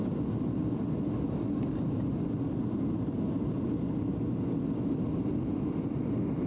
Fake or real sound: real